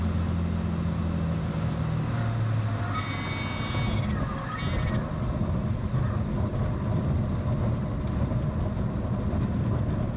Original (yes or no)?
yes